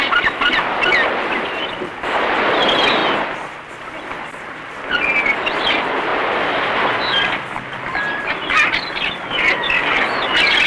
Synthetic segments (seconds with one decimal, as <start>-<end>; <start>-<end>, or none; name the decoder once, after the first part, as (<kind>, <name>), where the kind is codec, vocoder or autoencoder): none